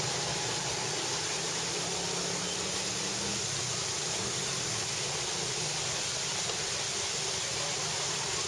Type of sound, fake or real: real